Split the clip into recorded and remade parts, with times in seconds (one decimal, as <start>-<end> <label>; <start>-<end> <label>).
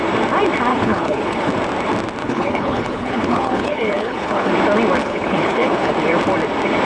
0.0-0.7 recorded; 0.7-1.5 remade; 1.5-2.2 recorded; 2.2-4.5 remade; 4.5-5.0 recorded; 5.0-5.9 remade; 5.9-6.8 recorded